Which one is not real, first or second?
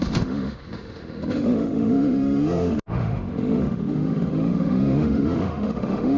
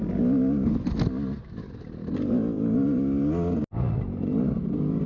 first